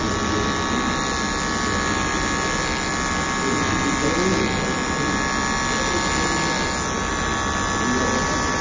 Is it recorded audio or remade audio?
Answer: recorded